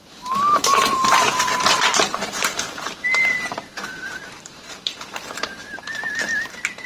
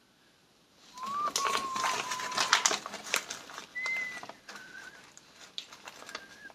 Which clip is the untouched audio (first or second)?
second